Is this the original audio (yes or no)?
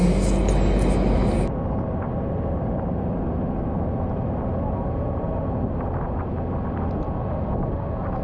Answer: yes